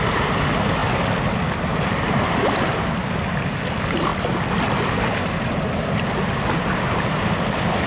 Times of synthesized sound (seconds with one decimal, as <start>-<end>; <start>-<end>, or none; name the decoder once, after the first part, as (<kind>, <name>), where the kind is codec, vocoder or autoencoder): none